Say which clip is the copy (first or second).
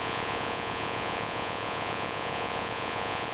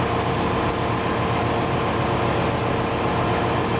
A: first